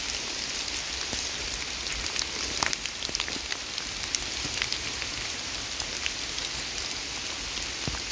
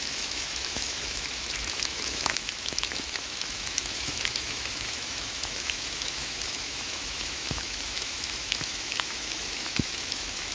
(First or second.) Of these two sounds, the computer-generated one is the second